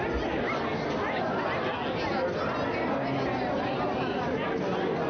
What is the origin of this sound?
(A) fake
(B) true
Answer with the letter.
B